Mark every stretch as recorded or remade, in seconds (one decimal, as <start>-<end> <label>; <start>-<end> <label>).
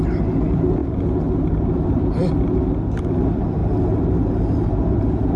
0.0-0.8 remade; 0.8-1.8 recorded; 1.8-2.2 remade; 2.2-3.0 recorded; 3.0-3.6 remade; 3.6-4.9 recorded; 4.9-5.4 remade